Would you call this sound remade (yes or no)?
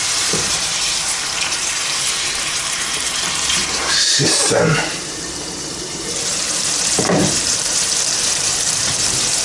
yes